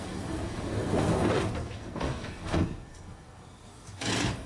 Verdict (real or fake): fake